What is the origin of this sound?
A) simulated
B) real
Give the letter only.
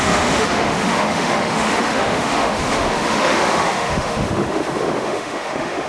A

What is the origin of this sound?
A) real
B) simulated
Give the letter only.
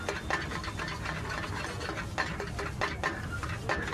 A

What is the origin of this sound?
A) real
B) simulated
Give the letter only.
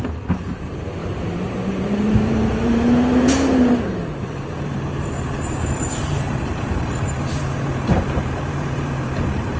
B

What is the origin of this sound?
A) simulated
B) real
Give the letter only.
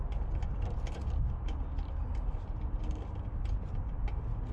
B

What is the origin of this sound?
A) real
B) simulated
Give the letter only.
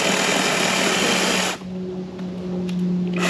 A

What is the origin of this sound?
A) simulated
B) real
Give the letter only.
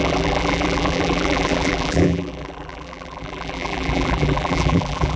A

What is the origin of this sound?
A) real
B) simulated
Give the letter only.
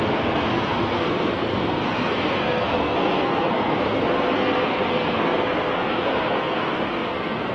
B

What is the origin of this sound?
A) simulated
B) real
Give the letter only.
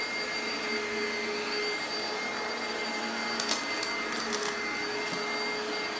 B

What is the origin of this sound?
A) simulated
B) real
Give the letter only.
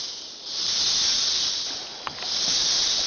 B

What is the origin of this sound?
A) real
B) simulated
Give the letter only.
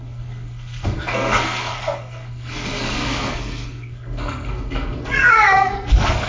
B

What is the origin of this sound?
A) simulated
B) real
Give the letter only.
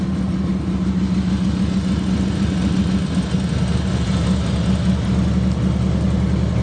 B